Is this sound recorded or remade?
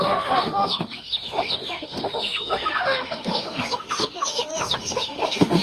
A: remade